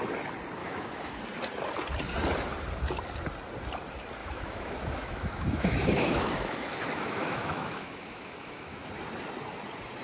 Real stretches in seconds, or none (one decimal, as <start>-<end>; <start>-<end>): 0.0-0.6; 1.2-4.2; 8.9-10.0